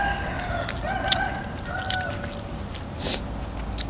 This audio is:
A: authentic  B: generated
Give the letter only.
A